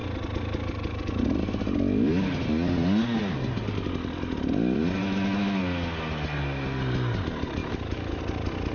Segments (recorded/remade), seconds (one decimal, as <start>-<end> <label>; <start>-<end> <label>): 0.0-5.0 recorded; 5.0-5.6 remade; 5.6-7.6 recorded; 7.6-8.2 remade; 8.2-8.7 recorded